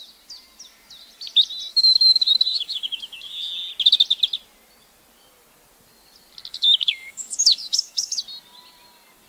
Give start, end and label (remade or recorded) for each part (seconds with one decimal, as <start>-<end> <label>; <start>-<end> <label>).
0.0-1.7 recorded; 1.7-3.5 remade; 3.5-6.5 recorded; 6.5-8.2 remade; 8.2-9.3 recorded